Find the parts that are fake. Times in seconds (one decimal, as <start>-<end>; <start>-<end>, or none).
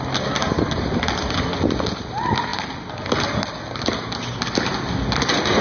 none